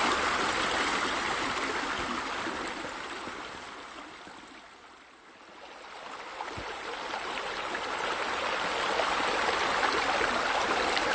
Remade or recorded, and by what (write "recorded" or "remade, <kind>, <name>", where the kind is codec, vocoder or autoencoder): recorded